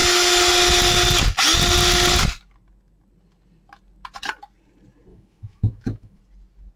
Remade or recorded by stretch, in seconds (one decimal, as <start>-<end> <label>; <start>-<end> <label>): 0.0-5.1 recorded; 5.1-6.2 remade; 6.2-6.8 recorded